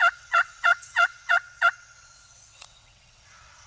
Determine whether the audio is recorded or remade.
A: remade